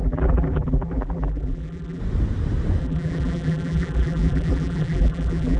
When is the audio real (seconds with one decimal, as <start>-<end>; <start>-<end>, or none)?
2.0-2.8